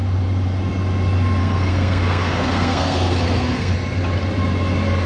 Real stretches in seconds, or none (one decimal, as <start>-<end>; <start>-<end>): 0.0-1.4; 3.7-5.1